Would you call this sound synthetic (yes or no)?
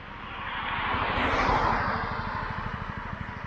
no